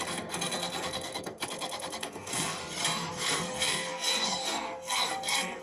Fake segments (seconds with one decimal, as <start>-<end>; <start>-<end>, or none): 0.0-2.6; 3.1-5.6

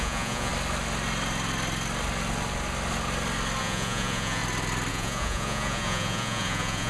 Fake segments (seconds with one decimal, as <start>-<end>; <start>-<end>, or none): 0.0-0.5; 3.6-4.4; 4.9-6.9

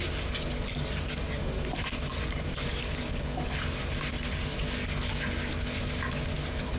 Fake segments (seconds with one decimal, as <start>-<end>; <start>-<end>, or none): 2.1-2.7

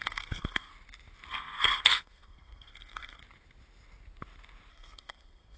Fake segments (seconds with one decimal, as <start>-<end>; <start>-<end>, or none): 0.0-0.7; 1.3-3.2; 4.7-5.6

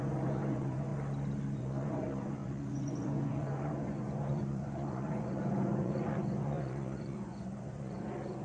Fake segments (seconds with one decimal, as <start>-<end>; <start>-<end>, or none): 0.0-0.9; 1.6-8.4

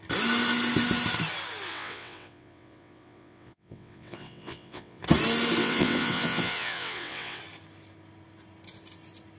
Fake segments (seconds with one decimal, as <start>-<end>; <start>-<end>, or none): 1.7-5.0; 5.6-7.4

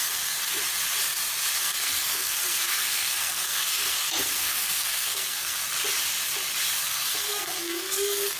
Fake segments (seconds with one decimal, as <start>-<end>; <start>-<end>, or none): 0.0-0.4; 1.6-5.6; 6.8-8.4

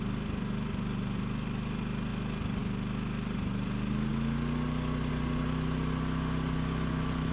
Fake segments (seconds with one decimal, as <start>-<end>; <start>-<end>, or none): none